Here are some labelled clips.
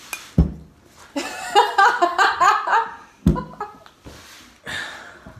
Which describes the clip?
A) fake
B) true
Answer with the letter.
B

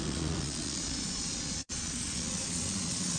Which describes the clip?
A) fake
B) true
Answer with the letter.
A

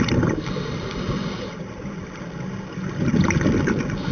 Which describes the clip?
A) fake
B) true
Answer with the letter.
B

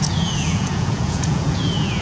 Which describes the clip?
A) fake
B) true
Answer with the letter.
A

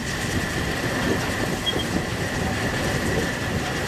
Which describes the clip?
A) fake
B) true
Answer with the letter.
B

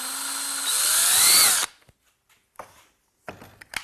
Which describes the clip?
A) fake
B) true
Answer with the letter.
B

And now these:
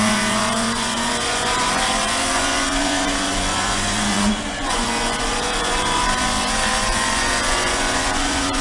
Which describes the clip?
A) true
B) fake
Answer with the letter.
B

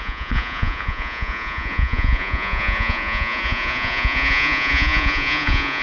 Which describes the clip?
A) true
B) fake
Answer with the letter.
B